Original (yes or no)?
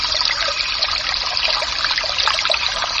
yes